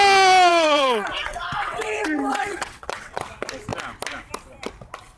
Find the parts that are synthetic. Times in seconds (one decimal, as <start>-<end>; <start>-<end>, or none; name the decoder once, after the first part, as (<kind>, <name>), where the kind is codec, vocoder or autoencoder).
0.5-3.2 (vocoder, WaveNeXt)